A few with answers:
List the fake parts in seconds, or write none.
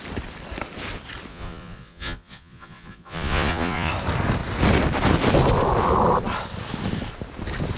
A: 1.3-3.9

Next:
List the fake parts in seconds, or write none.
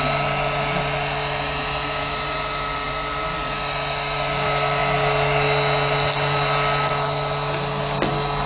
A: none